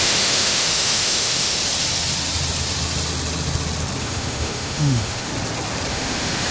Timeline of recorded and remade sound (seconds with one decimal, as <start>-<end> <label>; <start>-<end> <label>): 0.0-1.6 remade; 1.6-4.0 recorded; 4.0-5.3 remade; 5.3-5.9 recorded; 5.9-6.5 remade